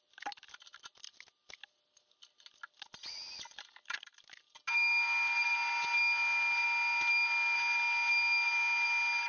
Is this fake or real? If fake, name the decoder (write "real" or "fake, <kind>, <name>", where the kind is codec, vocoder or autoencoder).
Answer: real